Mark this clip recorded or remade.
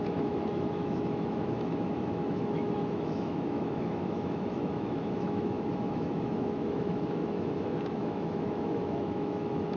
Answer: remade